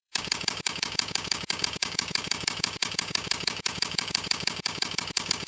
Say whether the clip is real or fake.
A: fake